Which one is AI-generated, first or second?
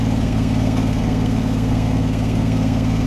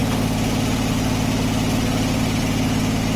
first